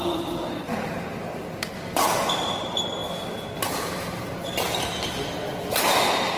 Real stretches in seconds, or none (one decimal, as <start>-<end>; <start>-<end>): 0.0-3.0; 4.5-6.4